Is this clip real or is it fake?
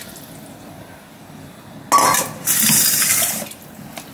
real